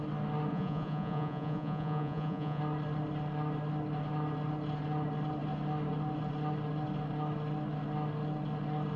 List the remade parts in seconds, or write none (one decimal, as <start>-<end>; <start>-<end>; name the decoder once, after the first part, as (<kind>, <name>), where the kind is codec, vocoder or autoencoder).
0.5-2.6 (vocoder, Vocos)